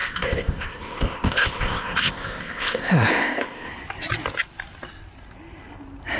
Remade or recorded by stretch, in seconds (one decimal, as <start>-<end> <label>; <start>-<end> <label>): 0.0-3.7 remade; 3.7-6.2 recorded